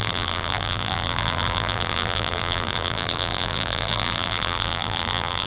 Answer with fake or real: fake